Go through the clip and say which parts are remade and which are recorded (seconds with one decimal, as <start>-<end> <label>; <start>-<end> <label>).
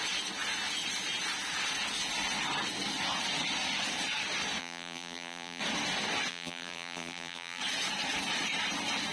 0.0-4.6 recorded; 4.6-5.6 remade; 5.6-6.3 recorded; 6.3-7.6 remade; 7.6-9.1 recorded